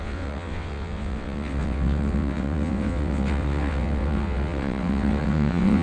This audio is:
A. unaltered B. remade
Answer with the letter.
B